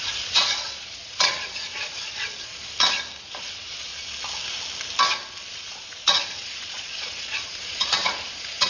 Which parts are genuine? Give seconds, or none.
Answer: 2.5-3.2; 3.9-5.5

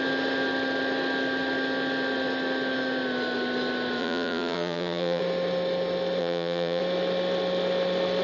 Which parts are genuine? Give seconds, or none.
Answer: 0.0-4.0; 5.2-6.2; 6.8-8.2

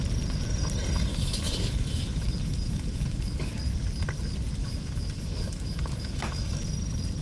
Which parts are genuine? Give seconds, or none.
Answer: 0.0-1.1; 3.6-4.6; 6.6-7.2

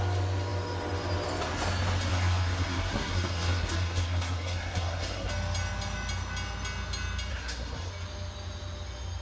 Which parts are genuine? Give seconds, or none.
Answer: 0.0-2.1; 5.3-7.3; 7.9-9.2

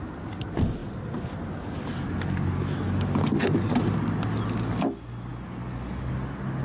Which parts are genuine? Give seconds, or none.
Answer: 0.0-6.6